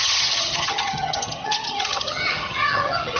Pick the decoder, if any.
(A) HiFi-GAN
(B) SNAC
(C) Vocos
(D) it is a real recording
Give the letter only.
A